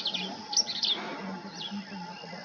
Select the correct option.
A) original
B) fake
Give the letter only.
A